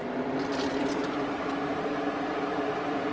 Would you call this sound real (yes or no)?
yes